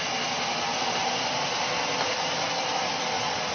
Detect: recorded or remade recorded